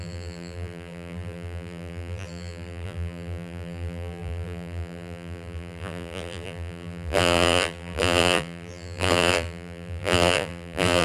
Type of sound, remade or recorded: remade